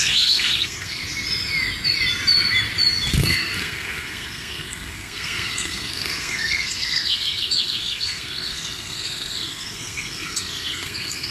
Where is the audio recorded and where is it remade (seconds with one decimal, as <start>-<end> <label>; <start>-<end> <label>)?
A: 0.0-1.0 remade; 1.0-3.2 recorded; 3.2-11.3 remade